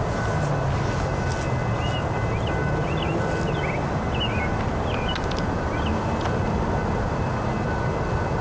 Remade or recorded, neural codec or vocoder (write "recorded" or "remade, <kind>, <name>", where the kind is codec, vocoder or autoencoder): recorded